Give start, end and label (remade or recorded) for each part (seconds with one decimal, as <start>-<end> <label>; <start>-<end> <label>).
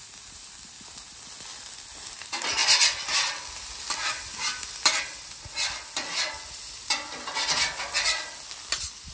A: 0.0-9.1 recorded